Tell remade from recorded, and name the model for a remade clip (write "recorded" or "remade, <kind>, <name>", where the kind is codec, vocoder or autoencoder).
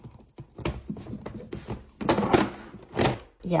recorded